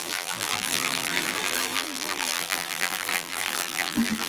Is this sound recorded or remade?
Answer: remade